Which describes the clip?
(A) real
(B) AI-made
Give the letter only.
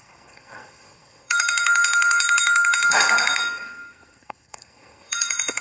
B